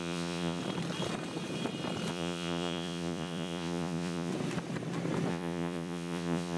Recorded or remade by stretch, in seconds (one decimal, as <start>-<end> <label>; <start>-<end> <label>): 0.0-0.6 remade; 0.6-2.1 recorded; 2.1-4.3 remade; 4.3-5.3 recorded; 5.3-6.6 remade